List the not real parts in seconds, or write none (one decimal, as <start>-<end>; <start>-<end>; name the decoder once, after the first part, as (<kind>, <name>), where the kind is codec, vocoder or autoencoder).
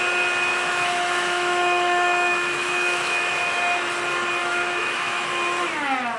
0.5-3.5 (autoencoder, DAC-VAE); 4.4-5.3